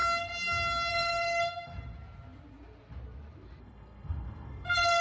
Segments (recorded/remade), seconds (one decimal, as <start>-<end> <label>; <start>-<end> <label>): 0.0-0.9 recorded; 0.9-1.7 remade; 1.7-3.6 recorded; 3.6-5.0 remade